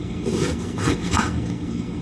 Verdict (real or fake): fake